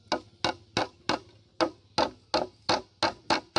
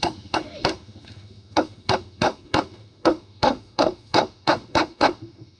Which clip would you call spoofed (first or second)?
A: second